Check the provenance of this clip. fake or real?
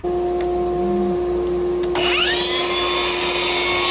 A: real